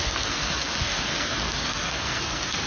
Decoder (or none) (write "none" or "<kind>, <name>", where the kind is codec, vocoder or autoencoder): codec, SNAC